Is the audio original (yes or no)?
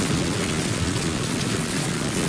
no